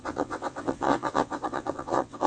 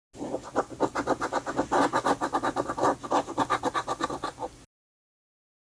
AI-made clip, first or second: first